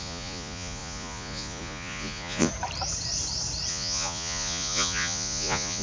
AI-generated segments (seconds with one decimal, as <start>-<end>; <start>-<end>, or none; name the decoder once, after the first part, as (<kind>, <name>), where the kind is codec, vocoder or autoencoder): 0.0-2.5 (vocoder, Vocos); 3.7-5.8